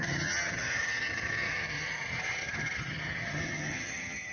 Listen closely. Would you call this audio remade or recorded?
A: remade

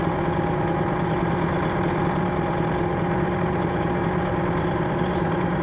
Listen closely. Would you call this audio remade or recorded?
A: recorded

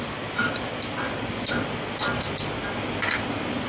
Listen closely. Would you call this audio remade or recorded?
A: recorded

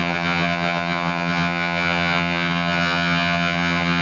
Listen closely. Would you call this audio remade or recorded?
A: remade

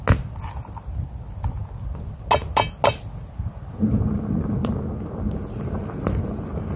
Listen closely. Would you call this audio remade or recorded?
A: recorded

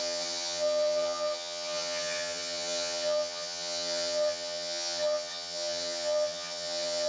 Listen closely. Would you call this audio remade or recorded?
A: remade